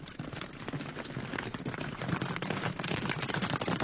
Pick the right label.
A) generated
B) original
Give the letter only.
B